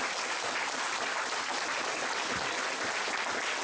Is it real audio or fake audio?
real